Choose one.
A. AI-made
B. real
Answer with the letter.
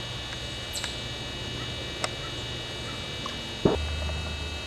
B